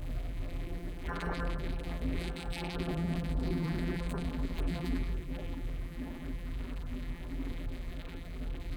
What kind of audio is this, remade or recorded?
remade